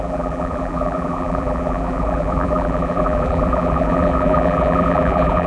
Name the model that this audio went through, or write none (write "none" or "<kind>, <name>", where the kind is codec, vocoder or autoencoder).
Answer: vocoder, BigVGAN v2